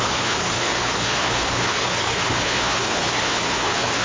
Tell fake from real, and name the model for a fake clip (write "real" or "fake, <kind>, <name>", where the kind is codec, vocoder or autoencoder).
fake, codec, HILCodec